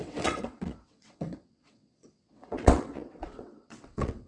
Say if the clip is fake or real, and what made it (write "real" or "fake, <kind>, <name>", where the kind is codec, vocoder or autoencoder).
fake, vocoder, WaveNeXt